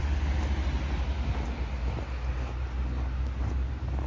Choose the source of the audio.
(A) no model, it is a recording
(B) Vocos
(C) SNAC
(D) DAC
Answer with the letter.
A